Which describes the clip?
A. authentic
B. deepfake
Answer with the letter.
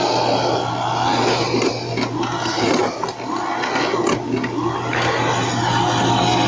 A